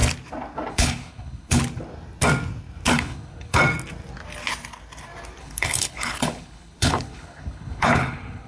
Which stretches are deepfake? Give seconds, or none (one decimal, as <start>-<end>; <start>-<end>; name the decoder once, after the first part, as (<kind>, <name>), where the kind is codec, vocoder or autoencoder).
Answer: 0.7-1.6 (codec, HILCodec); 2.9-3.6; 5.4-8.5